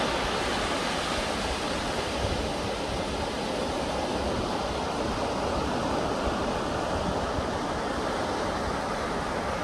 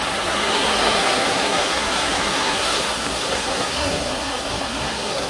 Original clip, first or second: first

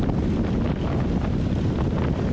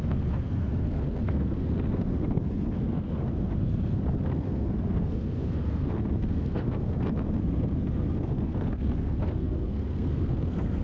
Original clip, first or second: first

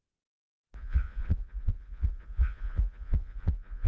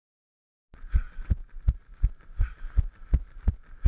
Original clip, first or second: second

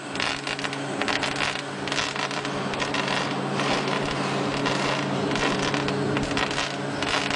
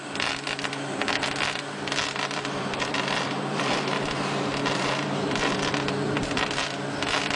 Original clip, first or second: first